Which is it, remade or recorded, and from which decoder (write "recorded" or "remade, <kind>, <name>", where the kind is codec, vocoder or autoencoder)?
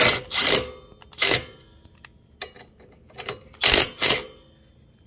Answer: recorded